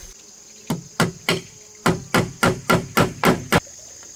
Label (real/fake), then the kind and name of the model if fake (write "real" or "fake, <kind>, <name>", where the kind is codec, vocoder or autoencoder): real